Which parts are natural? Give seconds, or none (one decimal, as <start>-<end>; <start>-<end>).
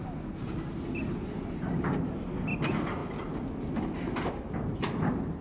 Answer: 0.0-5.4